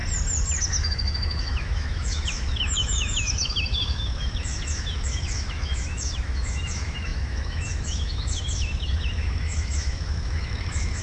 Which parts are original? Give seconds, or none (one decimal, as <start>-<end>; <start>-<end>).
0.0-0.6